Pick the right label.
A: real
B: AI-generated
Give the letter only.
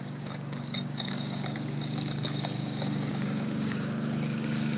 B